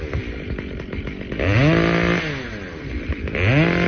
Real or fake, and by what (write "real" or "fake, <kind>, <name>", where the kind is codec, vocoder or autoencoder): real